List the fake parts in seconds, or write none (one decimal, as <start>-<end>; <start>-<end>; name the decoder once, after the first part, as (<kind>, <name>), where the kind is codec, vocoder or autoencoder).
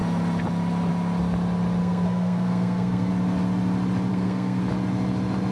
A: 1.8-3.1 (codec, SNAC); 4.1-4.6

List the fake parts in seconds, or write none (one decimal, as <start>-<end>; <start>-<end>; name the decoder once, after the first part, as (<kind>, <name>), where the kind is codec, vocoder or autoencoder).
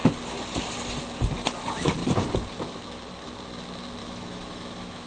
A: 4.0-5.1 (autoencoder, DAC-VAE)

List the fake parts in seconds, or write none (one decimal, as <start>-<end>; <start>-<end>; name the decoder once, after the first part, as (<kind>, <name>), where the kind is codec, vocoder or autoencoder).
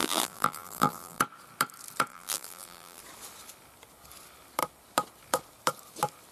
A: 0.0-1.2 (vocoder, BigVGAN v2); 2.1-3.0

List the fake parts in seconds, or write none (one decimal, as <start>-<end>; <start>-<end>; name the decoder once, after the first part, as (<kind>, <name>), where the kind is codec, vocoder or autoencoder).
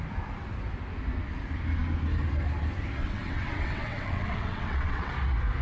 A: 3.0-5.1 (vocoder, WaveNeXt)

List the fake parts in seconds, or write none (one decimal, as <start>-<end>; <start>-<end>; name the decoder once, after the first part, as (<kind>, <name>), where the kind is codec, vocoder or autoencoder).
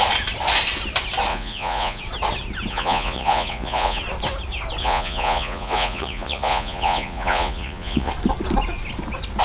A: 1.3-2.0 (vocoder, Vocos); 2.7-4.0; 4.8-8.1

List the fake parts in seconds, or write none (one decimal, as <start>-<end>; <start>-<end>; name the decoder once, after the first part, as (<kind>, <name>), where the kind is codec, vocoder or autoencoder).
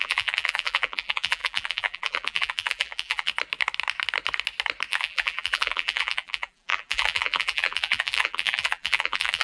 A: 0.0-3.3 (vocoder, BigVGAN v2); 4.9-9.4